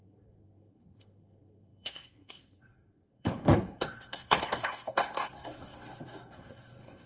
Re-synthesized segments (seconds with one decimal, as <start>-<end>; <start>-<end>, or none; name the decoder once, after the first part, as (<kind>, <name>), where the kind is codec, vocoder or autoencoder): 0.0-7.1 (codec, SNAC)